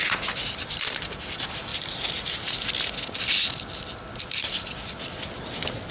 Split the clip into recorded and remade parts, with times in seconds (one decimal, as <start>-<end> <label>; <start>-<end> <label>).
0.0-1.7 remade; 1.7-4.2 recorded; 4.2-5.9 remade